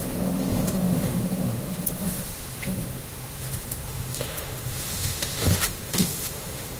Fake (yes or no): yes